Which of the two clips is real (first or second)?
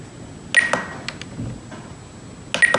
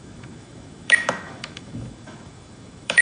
first